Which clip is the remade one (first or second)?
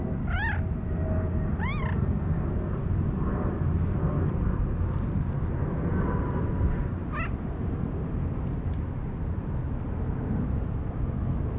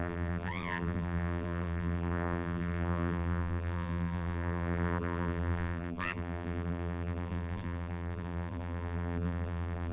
second